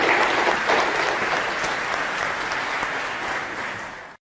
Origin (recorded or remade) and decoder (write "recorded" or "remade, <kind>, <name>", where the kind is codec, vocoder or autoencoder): recorded